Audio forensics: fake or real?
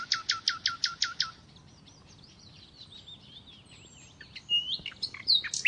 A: real